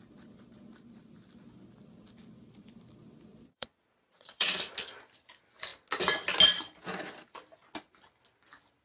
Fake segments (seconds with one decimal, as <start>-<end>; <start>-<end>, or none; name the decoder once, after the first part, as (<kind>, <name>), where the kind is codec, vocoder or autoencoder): 3.3-4.5 (vocoder, Vocos)